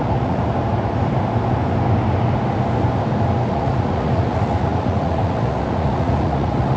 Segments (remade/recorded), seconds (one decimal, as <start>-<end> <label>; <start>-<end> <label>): 0.0-0.5 remade; 0.5-3.5 recorded; 3.5-6.8 remade